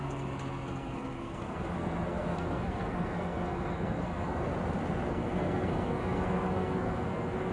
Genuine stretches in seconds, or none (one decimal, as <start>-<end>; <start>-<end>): 4.5-5.1